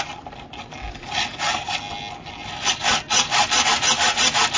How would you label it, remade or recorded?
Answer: recorded